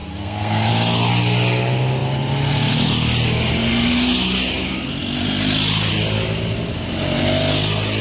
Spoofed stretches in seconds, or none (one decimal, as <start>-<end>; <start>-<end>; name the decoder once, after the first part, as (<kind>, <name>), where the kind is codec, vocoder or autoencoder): 0.0-0.7 (codec, SNAC)